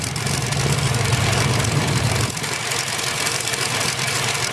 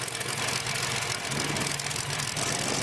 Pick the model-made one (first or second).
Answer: first